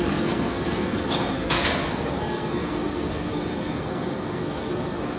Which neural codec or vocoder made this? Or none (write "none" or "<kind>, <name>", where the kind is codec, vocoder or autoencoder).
codec, SNAC